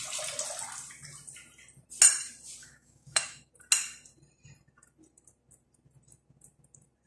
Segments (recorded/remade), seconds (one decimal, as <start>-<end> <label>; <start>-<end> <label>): 0.0-2.6 recorded; 2.6-3.5 remade; 3.5-7.1 recorded